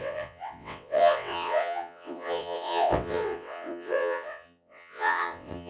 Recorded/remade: remade